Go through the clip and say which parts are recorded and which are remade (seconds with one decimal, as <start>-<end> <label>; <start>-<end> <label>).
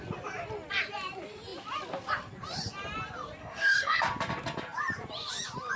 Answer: 0.0-3.4 recorded; 3.4-4.0 remade; 4.0-5.8 recorded